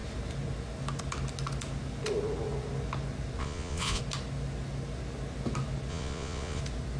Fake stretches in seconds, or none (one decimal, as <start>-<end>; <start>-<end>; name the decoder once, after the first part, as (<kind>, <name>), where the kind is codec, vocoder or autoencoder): 3.4-4.0 (vocoder, Vocos); 5.9-6.6